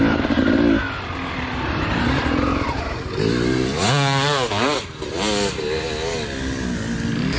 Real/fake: real